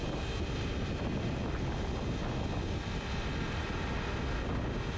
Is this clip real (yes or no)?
yes